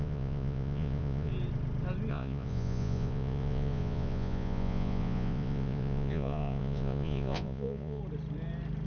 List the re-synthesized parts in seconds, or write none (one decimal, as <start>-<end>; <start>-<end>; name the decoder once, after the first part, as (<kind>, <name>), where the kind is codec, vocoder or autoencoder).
0.0-1.3 (vocoder, Vocos); 2.1-8.0